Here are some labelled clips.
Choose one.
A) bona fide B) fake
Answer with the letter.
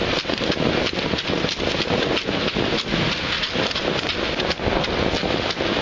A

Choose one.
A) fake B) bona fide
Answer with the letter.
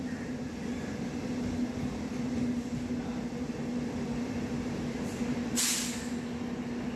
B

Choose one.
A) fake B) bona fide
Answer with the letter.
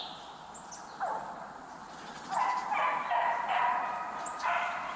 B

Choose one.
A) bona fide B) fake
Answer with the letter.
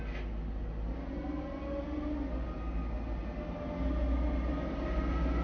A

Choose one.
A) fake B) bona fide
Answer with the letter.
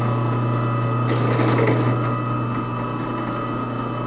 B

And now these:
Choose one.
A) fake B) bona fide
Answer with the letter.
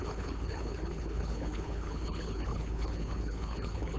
A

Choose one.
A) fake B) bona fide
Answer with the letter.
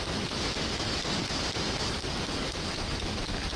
B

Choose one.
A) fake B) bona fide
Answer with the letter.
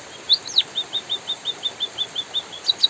B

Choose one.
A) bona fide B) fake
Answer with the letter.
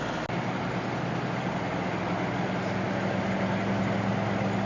A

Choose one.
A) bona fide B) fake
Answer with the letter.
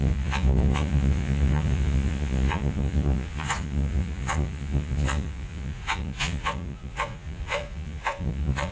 B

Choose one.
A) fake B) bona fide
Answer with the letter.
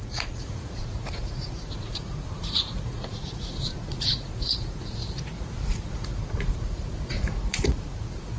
A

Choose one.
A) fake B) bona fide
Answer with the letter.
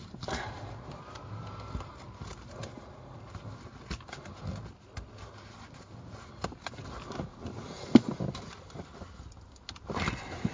B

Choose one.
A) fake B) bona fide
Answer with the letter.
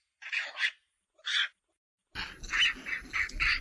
B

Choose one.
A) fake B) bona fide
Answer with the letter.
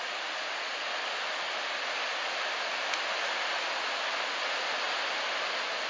B